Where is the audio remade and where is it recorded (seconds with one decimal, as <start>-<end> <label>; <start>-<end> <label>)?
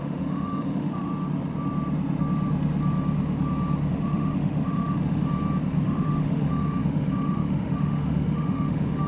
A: 0.0-1.1 remade; 1.1-3.9 recorded; 3.9-5.2 remade; 5.2-5.8 recorded; 5.8-9.1 remade